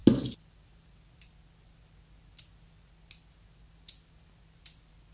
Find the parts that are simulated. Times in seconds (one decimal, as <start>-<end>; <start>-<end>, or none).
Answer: none